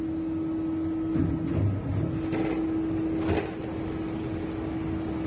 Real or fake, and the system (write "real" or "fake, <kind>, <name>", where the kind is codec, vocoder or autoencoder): real